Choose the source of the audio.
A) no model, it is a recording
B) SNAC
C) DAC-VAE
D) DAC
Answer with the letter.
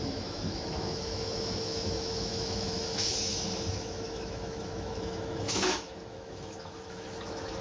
C